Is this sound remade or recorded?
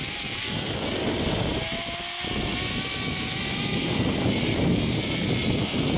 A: recorded